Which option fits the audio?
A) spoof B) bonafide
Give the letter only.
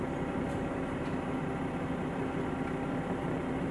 B